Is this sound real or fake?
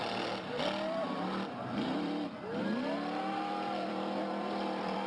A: fake